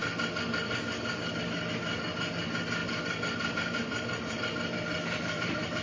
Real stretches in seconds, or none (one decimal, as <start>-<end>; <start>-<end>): 0.0-2.8